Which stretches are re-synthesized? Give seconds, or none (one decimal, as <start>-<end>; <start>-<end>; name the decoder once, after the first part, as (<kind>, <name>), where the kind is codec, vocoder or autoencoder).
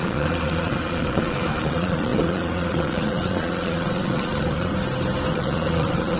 0.0-4.7 (vocoder, Vocos); 5.3-6.2